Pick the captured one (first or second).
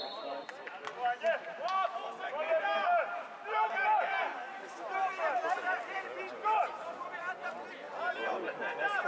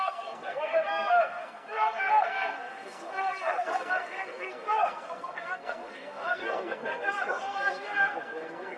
first